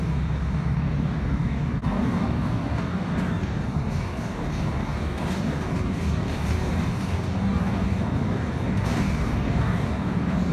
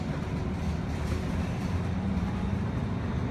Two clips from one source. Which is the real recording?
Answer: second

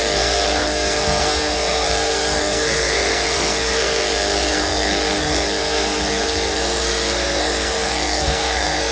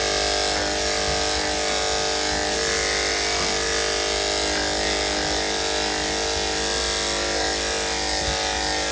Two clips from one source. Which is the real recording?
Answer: second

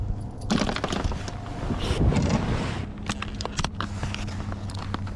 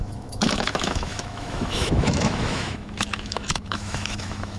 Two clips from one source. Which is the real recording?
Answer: first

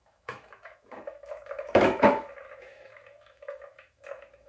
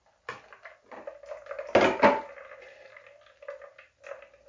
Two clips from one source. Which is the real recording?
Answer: second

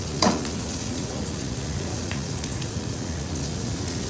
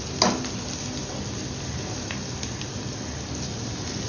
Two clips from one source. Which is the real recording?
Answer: second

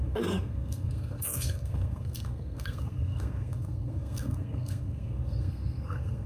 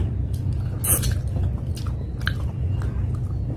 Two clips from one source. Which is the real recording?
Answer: second